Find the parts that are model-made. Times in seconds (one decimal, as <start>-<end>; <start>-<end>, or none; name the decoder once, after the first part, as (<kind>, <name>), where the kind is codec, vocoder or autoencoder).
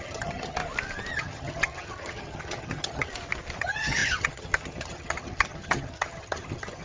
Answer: 0.0-0.6 (vocoder, HiFi-GAN); 1.1-3.1; 3.6-6.8